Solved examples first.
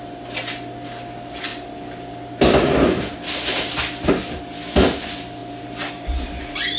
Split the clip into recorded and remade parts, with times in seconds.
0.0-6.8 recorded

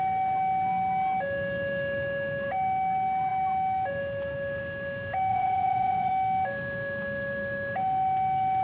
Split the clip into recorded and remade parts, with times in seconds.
0.0-5.3 recorded; 5.3-6.1 remade; 6.1-8.6 recorded

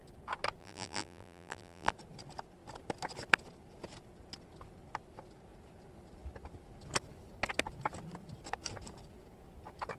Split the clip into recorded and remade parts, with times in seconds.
0.0-0.6 recorded; 0.6-1.9 remade; 1.9-10.0 recorded

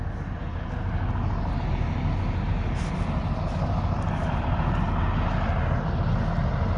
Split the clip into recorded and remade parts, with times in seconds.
0.0-6.8 recorded

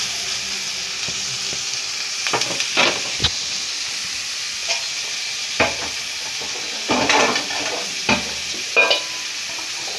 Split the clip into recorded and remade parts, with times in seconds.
0.0-10.0 recorded

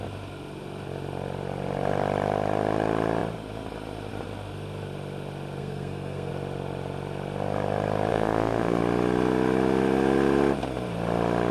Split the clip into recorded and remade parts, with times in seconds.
0.0-5.6 recorded; 5.6-6.3 remade; 6.3-8.1 recorded; 8.1-8.8 remade; 8.8-11.5 recorded

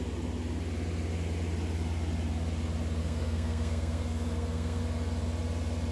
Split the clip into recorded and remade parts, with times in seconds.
0.0-3.0 recorded; 3.0-4.8 remade; 4.8-5.9 recorded